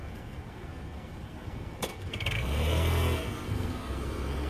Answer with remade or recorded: remade